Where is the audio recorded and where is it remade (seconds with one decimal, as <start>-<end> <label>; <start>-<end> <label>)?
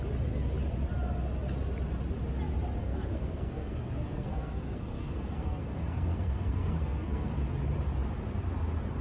0.0-2.8 recorded; 2.8-7.3 remade; 7.3-9.0 recorded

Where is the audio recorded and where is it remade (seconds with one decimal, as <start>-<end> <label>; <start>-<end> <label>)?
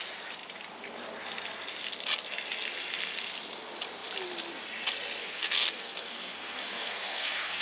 0.0-5.2 recorded; 5.2-7.6 remade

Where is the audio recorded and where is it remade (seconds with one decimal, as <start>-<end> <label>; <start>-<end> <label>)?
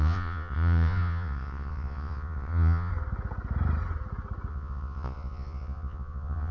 0.0-2.9 remade; 2.9-4.5 recorded; 4.5-6.5 remade